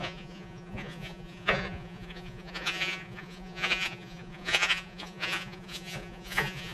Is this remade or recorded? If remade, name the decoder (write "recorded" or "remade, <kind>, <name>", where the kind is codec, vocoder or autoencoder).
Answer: remade, vocoder, Vocos